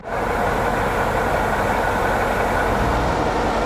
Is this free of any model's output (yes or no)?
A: yes